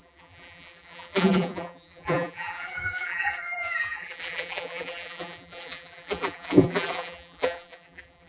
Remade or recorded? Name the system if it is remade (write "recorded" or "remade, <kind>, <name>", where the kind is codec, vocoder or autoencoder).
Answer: remade, vocoder, BigVGAN v2